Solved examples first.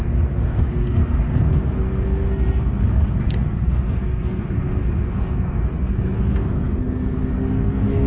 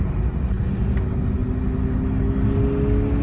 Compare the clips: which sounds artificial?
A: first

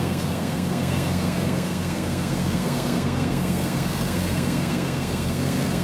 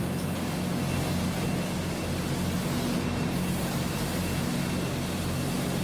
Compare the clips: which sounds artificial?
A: first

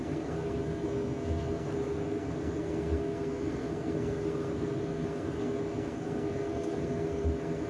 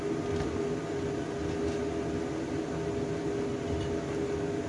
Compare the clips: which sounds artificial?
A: first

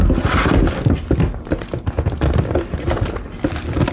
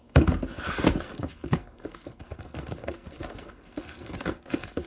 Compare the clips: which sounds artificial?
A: second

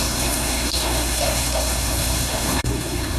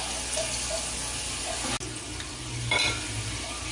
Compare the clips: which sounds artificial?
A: first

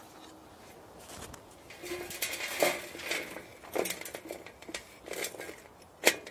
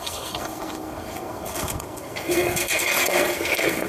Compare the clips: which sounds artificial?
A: second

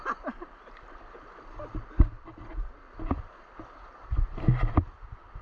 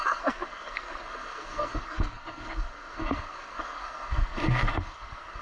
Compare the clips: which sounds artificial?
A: second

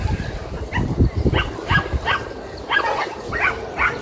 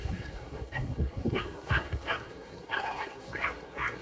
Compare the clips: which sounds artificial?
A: second